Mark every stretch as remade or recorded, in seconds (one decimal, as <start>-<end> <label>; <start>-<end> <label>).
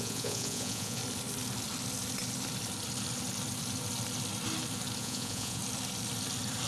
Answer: 0.0-1.0 remade; 1.0-5.0 recorded; 5.0-5.6 remade; 5.6-6.7 recorded